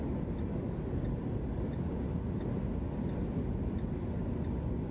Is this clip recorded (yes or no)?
yes